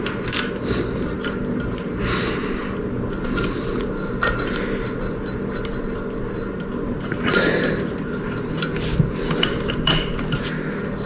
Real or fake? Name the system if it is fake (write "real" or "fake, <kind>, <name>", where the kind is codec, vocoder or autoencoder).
real